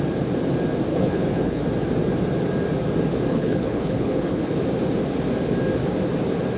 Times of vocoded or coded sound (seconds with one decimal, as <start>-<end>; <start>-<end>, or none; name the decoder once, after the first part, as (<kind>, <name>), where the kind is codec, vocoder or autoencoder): 0.9-1.6 (codec, HILCodec); 3.3-4.6